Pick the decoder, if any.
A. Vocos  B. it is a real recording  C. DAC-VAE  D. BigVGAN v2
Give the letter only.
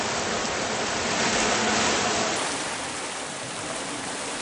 B